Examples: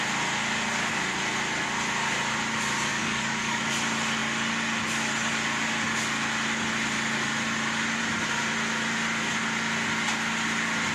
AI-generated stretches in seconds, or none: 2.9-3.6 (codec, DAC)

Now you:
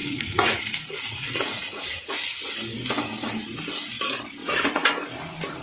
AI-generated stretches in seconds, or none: 0.0-2.1 (vocoder, Vocos); 4.4-4.9